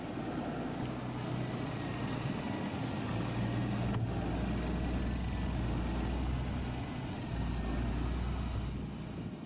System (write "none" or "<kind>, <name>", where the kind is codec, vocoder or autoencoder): none